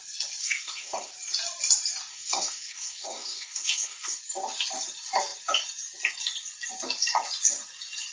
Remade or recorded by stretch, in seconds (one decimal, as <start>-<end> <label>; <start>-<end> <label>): 0.0-0.4 recorded; 0.4-1.1 remade; 1.1-2.1 recorded; 2.1-4.2 remade; 4.2-8.1 recorded